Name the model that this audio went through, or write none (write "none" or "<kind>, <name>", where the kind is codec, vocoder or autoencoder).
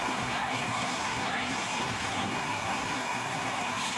codec, SNAC